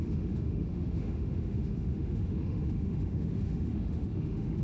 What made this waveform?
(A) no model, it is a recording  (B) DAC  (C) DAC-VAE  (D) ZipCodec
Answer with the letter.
C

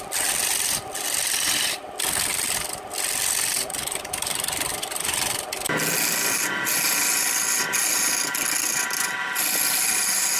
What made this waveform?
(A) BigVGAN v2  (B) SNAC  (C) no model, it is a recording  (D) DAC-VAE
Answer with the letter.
C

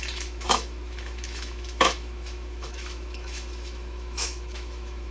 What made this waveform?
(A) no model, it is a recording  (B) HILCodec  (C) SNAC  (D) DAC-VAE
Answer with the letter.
D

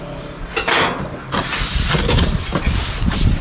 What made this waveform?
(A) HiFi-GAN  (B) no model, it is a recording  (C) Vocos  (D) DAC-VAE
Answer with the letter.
B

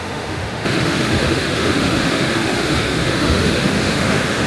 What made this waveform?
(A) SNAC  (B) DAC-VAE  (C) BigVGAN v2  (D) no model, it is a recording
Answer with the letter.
B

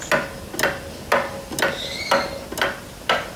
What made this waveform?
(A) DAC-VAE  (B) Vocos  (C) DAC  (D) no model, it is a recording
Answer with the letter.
D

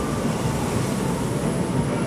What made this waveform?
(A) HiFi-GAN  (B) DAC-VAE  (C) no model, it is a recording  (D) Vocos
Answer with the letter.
C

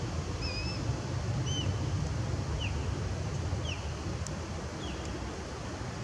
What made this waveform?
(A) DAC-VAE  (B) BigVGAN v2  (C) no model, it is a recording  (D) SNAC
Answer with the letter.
C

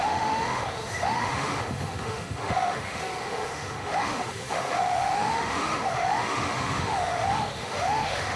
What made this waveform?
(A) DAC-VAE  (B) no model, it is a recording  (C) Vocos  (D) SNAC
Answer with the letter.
A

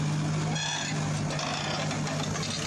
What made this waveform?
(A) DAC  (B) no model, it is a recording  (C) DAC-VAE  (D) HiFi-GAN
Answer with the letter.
B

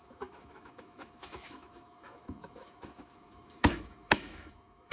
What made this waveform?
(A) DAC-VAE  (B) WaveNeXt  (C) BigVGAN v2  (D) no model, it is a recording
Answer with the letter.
A